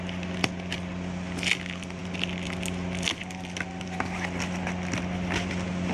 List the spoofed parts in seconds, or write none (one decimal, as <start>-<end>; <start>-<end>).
none

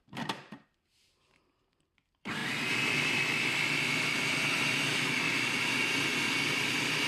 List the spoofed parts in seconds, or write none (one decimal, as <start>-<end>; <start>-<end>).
none